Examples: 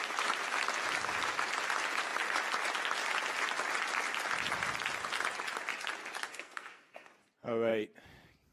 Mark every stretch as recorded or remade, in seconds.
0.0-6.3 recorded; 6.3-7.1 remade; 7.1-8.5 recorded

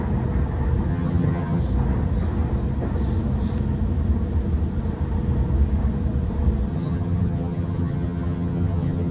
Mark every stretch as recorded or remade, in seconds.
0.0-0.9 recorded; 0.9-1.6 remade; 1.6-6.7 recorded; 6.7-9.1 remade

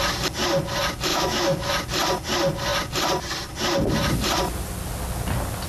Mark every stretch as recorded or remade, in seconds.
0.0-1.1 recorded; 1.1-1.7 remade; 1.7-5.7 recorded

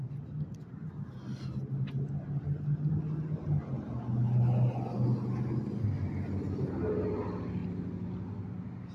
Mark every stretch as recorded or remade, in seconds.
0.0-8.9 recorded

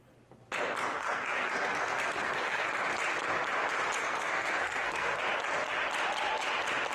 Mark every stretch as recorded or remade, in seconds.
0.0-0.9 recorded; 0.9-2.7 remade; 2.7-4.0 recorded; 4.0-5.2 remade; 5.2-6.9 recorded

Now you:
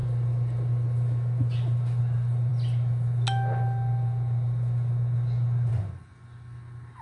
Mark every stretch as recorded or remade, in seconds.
0.0-7.0 recorded

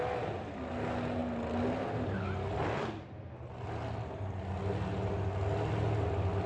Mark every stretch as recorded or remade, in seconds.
0.0-6.5 recorded

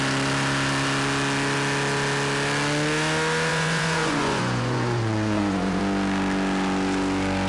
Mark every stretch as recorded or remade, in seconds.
0.0-3.5 recorded; 3.5-5.8 remade; 5.8-7.5 recorded